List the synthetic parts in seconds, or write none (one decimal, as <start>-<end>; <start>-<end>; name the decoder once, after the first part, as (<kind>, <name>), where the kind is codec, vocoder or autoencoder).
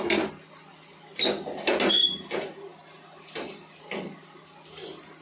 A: none